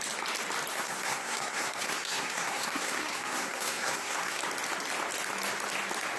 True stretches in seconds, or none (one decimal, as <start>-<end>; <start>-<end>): 0.0-0.7; 4.4-6.2